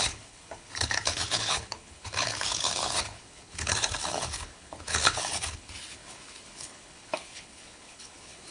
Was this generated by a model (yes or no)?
yes